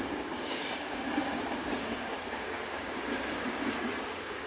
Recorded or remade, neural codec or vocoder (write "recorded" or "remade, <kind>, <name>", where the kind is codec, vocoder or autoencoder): remade, codec, DAC